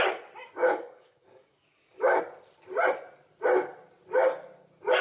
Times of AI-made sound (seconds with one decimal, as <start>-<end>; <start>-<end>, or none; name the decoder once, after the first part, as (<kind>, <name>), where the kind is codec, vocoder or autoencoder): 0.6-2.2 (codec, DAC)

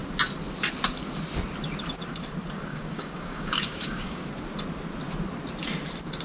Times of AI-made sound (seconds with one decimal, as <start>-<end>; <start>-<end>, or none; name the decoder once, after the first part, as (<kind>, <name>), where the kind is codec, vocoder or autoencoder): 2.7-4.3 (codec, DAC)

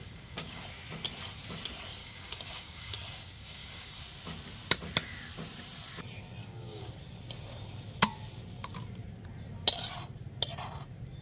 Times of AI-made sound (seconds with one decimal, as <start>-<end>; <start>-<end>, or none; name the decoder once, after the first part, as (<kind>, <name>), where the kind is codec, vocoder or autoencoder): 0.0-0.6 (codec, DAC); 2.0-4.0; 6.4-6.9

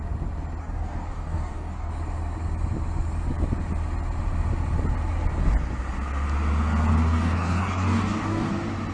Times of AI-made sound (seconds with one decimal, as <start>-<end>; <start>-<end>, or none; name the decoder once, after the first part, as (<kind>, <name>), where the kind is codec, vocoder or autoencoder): 0.6-1.9 (codec, DAC); 6.9-8.5